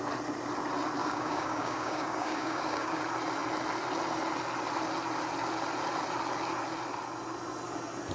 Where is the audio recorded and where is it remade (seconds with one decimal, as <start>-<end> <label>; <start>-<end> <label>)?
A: 0.0-1.0 recorded; 1.0-3.0 remade; 3.0-8.1 recorded